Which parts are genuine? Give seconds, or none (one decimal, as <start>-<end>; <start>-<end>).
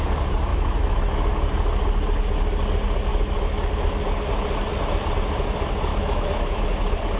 0.0-0.5; 1.3-3.1; 3.7-5.9; 6.6-7.2